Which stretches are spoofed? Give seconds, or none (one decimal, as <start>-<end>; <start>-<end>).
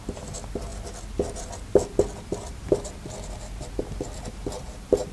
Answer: none